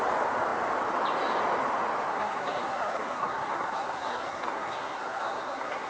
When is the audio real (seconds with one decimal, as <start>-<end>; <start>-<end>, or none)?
0.0-2.1